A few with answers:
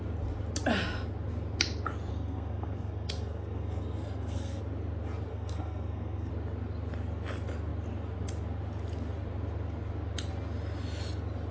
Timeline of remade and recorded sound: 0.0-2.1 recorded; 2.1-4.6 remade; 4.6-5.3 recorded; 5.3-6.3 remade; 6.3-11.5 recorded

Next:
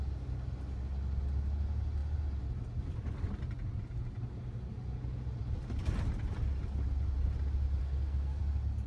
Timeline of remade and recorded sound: 0.0-7.8 recorded; 7.8-8.4 remade; 8.4-8.9 recorded

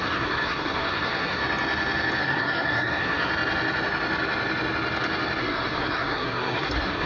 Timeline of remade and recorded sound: 0.0-1.4 remade; 1.4-2.2 recorded; 2.2-3.3 remade; 3.3-5.4 recorded; 5.4-7.1 remade

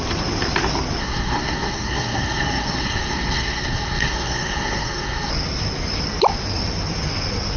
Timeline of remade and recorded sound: 0.0-1.0 recorded; 1.0-5.3 remade; 5.3-7.6 recorded

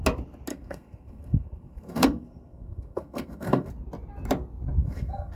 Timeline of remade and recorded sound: 0.0-0.5 recorded; 0.5-3.7 remade; 3.7-4.8 recorded; 4.8-5.4 remade

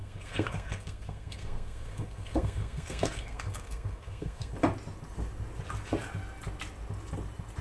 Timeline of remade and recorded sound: 0.0-4.5 remade; 4.5-7.6 recorded

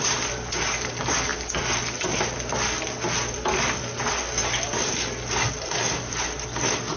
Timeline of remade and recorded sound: 0.0-7.0 recorded